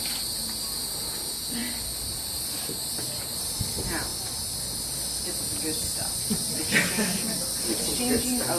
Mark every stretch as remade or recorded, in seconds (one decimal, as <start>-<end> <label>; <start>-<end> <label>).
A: 0.0-8.6 recorded